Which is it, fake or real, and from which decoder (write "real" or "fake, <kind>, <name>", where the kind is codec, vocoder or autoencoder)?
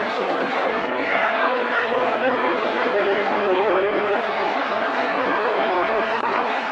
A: fake, codec, SNAC